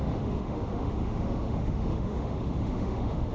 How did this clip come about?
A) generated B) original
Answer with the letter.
A